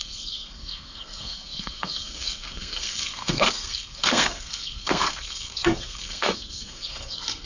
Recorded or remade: remade